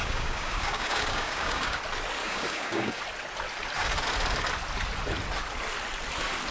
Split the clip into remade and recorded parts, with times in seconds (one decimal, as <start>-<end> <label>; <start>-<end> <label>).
0.0-1.8 remade; 1.8-2.2 recorded; 2.2-3.0 remade; 3.0-6.5 recorded